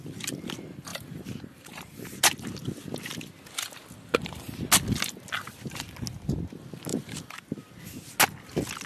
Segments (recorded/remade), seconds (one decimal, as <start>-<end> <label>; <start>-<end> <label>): 0.0-0.9 recorded; 0.9-2.2 remade; 2.2-6.9 recorded; 6.9-7.8 remade; 7.8-8.9 recorded